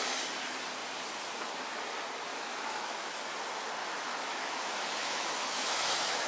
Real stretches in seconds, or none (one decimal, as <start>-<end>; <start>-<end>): 0.0-2.3; 3.2-3.8